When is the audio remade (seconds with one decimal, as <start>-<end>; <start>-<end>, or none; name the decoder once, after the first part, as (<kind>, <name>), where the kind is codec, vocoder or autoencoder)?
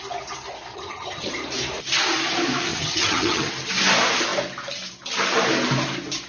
0.7-1.3 (vocoder, HiFi-GAN); 2.7-3.5